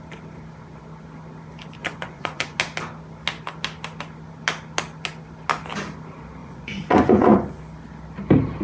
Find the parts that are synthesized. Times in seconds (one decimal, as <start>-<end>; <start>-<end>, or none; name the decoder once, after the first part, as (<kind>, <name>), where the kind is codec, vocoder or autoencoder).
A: 1.8-2.6 (vocoder, Vocos); 6.4-7.6